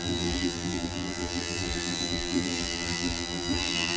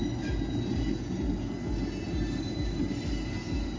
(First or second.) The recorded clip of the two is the second